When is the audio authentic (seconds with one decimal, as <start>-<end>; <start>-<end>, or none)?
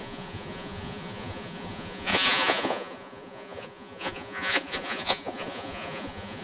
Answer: none